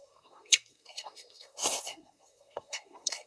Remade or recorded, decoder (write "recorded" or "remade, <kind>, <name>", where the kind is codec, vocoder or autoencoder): remade, codec, SNAC